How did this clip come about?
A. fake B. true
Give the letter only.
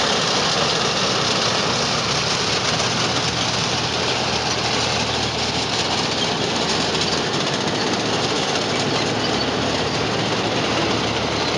B